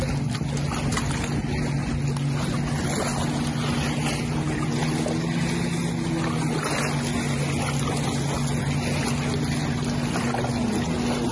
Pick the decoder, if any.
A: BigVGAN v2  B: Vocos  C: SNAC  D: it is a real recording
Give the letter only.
D